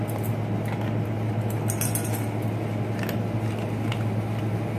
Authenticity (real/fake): real